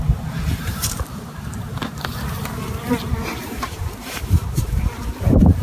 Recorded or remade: remade